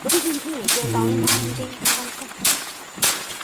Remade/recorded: remade